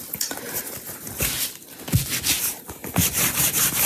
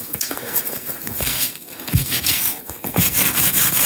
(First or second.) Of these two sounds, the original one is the first